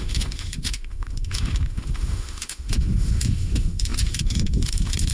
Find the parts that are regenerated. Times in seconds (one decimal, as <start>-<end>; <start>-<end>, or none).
0.0-5.1